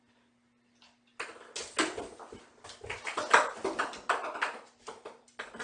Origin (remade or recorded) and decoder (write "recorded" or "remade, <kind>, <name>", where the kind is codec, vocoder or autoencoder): recorded